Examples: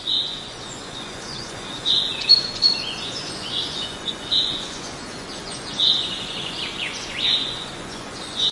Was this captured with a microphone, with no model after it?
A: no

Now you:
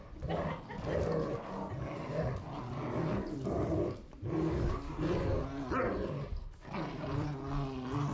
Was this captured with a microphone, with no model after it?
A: yes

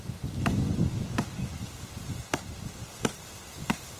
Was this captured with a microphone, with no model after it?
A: yes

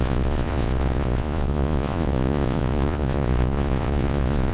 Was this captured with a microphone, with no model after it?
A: no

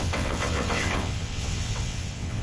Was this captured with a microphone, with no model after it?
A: no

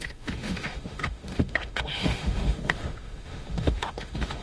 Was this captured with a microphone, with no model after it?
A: no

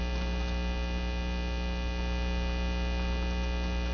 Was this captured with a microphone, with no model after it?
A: yes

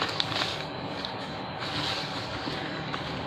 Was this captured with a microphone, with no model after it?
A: no